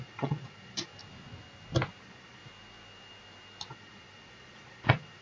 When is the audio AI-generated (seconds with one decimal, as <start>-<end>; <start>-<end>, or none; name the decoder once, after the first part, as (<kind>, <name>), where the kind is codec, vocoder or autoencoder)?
0.0-0.9 (vocoder, Vocos); 2.0-2.4; 3.7-5.2